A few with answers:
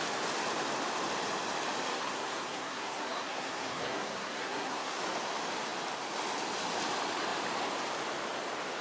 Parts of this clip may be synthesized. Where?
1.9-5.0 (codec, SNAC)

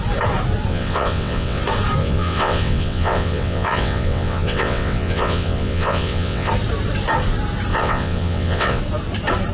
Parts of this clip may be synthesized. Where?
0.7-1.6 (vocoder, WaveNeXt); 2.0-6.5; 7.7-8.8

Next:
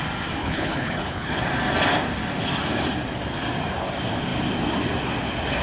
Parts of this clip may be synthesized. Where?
0.4-1.4 (codec, HILCodec)

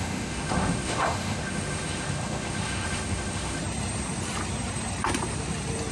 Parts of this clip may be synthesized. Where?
0.0-3.6 (autoencoder, DAC-VAE)